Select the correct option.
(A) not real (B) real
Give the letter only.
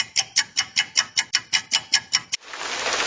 B